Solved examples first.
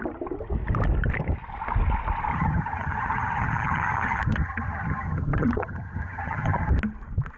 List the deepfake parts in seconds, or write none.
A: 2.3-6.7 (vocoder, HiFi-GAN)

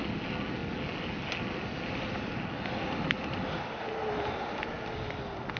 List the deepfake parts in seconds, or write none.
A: none